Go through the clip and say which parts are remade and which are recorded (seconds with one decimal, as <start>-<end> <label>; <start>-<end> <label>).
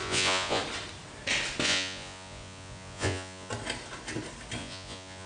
0.0-0.6 remade; 0.6-1.6 recorded; 1.6-3.5 remade; 3.5-4.6 recorded; 4.6-5.3 remade